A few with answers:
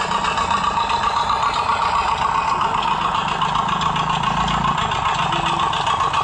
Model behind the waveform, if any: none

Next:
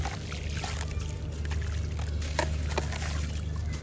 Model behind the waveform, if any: none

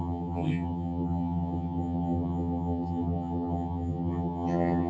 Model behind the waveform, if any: vocoder, HiFi-GAN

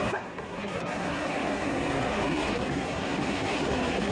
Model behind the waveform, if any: codec, SNAC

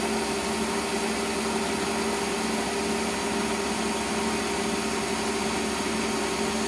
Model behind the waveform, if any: none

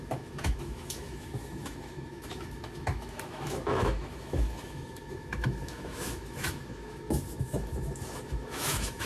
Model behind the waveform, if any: autoencoder, DAC-VAE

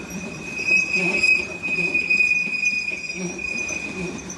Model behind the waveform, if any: vocoder, BigVGAN v2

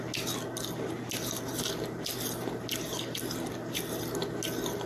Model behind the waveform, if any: none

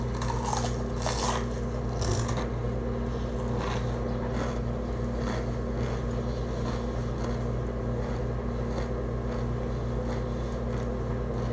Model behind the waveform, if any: none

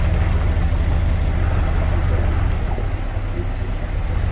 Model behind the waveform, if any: none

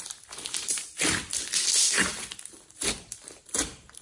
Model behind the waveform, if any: vocoder, BigVGAN v2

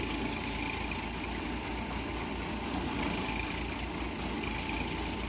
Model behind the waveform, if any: none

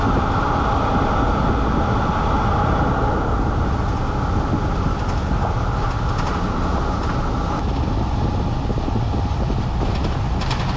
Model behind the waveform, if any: none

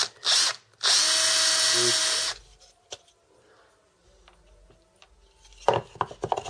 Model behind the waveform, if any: none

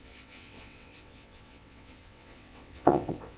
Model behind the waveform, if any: vocoder, WaveNeXt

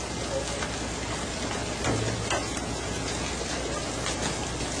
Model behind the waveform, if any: none